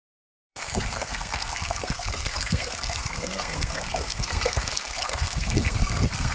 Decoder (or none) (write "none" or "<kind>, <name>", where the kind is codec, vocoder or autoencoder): codec, SNAC